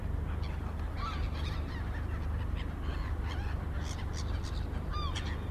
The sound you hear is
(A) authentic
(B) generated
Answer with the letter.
A